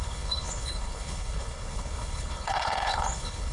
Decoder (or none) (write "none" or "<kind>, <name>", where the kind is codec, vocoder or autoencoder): codec, HILCodec